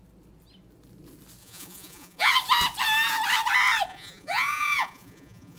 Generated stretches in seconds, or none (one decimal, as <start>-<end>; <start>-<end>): 1.4-2.3; 3.9-5.6